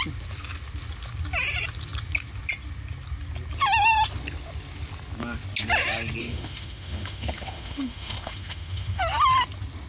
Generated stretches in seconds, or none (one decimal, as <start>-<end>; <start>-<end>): 6.2-9.0